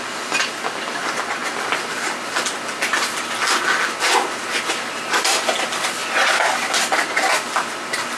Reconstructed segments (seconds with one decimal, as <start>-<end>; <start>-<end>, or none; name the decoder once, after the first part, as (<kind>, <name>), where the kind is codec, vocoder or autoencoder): none